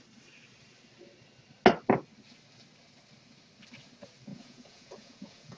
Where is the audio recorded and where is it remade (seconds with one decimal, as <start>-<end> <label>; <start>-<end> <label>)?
0.0-4.3 recorded; 4.3-5.6 remade